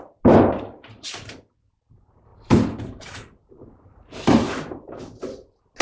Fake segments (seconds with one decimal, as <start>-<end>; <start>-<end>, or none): none